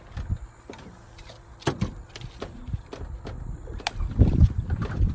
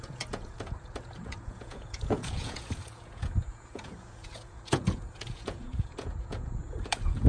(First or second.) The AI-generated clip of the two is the second